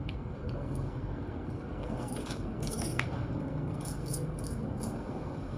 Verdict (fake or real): fake